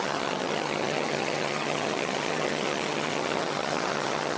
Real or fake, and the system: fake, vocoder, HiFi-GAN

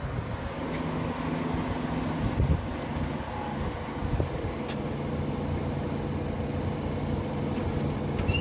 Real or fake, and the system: real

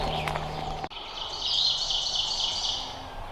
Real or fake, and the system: real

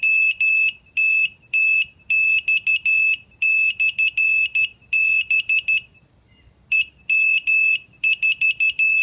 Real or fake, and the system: real